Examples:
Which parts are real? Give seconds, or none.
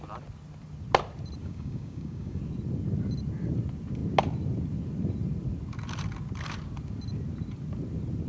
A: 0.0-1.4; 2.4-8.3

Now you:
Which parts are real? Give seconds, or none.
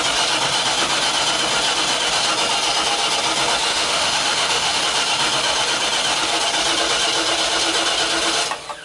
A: 0.0-3.7; 4.8-8.8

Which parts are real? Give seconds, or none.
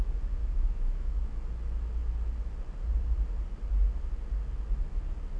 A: 0.0-0.4; 1.2-5.4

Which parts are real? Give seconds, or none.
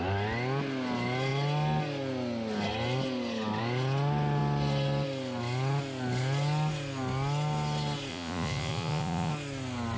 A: 0.0-8.1; 9.3-10.0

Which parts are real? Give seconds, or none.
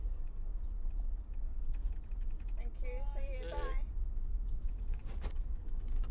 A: 0.5-3.9; 4.3-4.9